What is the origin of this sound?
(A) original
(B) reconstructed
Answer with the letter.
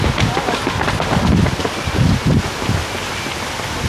A